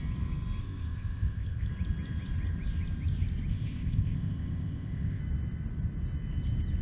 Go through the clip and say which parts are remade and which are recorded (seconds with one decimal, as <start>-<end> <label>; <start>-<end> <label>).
0.0-0.6 recorded; 0.6-1.7 remade; 1.7-3.5 recorded; 3.5-5.2 remade; 5.2-6.8 recorded